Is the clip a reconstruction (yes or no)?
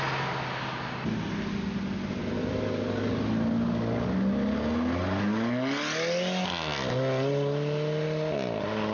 no